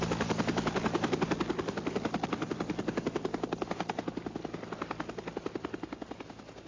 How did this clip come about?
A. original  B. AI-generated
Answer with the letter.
A